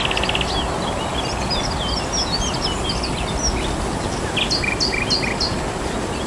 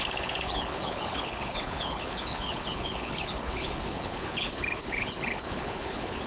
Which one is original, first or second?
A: first